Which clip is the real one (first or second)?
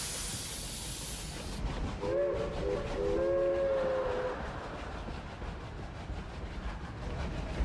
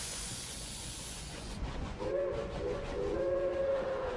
first